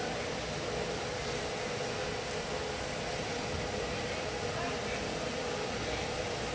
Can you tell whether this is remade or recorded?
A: recorded